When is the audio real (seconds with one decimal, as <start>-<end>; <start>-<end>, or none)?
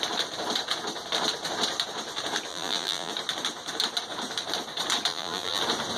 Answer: 0.0-2.5; 3.1-5.1; 5.6-6.0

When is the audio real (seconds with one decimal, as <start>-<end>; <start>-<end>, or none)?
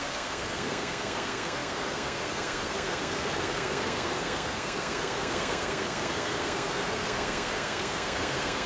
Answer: none